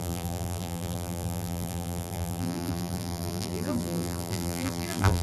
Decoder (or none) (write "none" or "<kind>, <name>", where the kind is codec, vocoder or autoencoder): vocoder, BigVGAN v2